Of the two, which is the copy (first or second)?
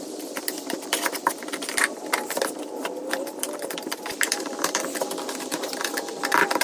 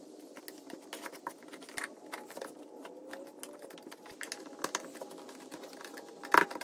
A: first